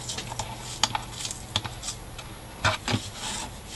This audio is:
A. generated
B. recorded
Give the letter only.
B